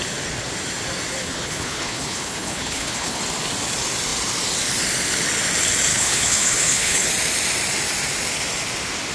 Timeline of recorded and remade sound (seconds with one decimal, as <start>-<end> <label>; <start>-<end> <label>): 0.0-1.2 recorded; 1.2-3.2 remade; 3.2-5.9 recorded; 5.9-7.1 remade; 7.1-9.1 recorded